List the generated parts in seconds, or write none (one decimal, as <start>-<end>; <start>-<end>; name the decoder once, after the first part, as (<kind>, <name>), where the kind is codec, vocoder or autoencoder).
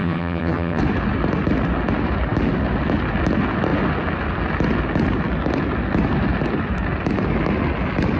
0.0-0.8 (vocoder, HiFi-GAN)